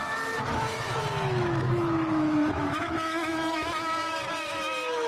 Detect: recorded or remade remade